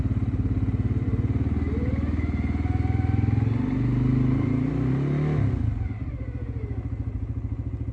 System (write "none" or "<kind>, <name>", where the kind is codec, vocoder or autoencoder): none